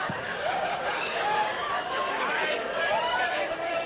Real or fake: fake